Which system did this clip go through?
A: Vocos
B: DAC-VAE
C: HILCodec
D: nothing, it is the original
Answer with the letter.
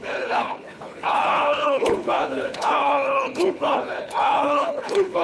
C